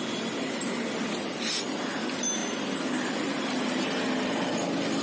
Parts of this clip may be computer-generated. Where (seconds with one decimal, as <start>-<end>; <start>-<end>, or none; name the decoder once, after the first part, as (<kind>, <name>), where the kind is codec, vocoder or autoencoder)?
none